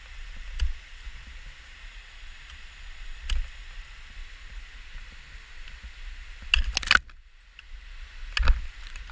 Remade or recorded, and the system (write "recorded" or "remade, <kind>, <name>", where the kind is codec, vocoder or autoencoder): recorded